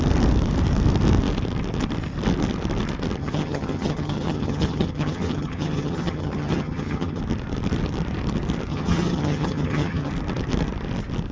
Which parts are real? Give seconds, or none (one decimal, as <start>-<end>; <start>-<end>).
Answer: 0.0-3.2; 7.2-8.7; 10.1-11.3